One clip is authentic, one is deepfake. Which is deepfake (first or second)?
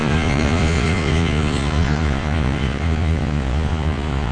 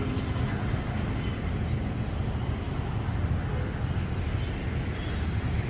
first